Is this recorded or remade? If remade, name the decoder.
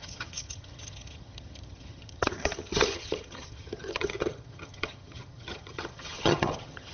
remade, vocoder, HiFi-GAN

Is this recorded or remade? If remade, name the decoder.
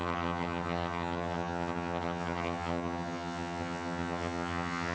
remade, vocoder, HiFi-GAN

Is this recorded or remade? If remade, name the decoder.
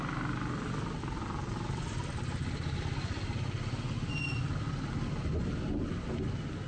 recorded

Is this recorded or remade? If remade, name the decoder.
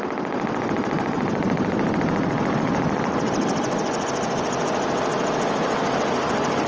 recorded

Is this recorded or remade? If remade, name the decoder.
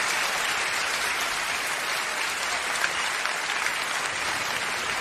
recorded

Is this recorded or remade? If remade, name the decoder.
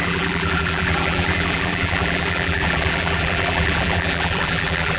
remade, vocoder, BigVGAN v2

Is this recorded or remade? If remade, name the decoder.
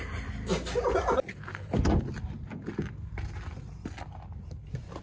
recorded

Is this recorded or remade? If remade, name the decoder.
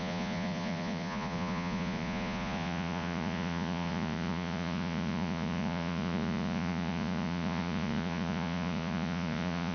remade, vocoder, Vocos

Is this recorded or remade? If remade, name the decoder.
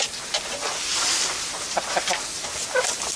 recorded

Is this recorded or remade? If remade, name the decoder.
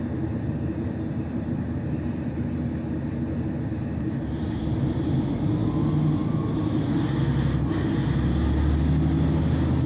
recorded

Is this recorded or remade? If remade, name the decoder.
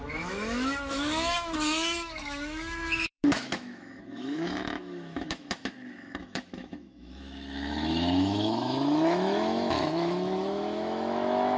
remade, autoencoder, DAC-VAE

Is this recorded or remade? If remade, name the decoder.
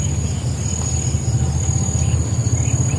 recorded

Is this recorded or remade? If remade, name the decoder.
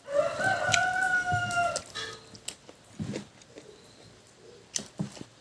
recorded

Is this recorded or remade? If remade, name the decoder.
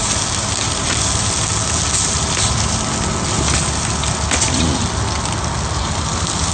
recorded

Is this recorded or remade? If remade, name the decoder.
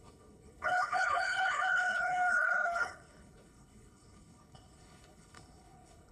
remade, codec, HILCodec